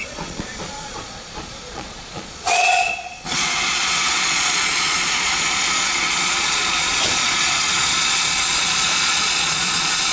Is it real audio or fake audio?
fake